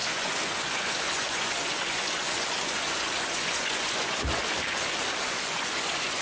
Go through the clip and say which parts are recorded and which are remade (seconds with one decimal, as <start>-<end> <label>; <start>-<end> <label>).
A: 0.0-4.4 remade; 4.4-5.2 recorded; 5.2-6.2 remade